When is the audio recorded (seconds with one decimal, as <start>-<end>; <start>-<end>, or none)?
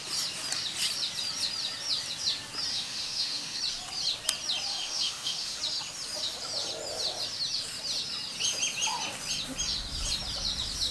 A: 0.0-2.7; 3.6-4.7; 5.6-10.9